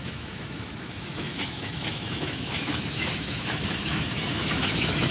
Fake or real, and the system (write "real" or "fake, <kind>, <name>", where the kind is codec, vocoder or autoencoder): fake, autoencoder, DAC-VAE